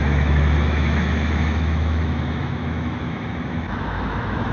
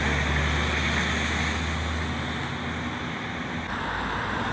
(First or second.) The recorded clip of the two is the second